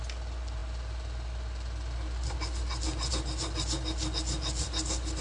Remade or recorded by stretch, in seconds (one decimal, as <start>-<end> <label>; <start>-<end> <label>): 0.0-5.2 recorded